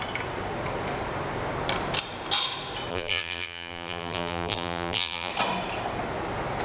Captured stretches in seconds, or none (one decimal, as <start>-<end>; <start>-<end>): 0.0-2.9; 5.3-6.6